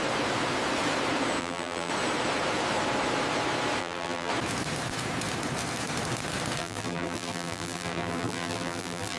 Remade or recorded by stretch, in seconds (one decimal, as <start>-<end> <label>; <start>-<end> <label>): 0.0-1.4 recorded; 1.4-1.9 remade; 1.9-3.8 recorded; 3.8-4.3 remade; 4.3-6.6 recorded; 6.6-9.2 remade